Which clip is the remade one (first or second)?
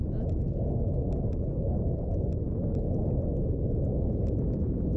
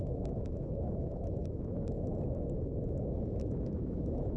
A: second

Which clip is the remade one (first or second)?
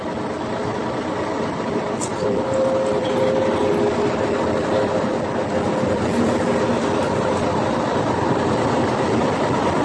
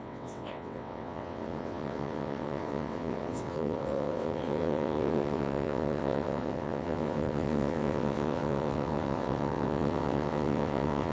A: second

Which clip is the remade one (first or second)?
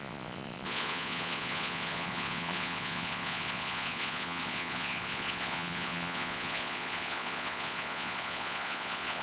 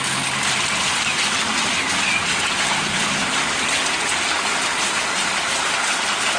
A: first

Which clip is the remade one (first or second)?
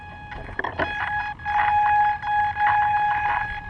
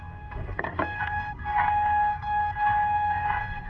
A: second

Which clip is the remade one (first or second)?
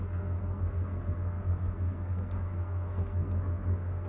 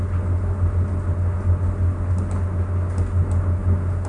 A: first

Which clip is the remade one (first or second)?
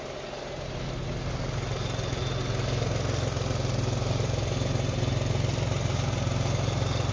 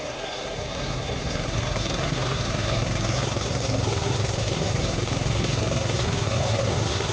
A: second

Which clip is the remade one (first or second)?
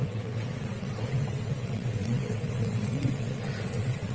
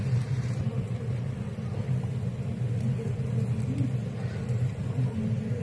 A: first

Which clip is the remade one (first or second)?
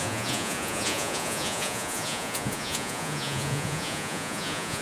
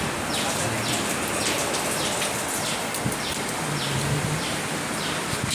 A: first